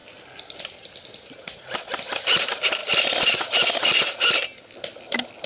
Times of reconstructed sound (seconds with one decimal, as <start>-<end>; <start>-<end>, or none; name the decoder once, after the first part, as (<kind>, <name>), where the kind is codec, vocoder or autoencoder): 2.8-4.6 (vocoder, BigVGAN v2)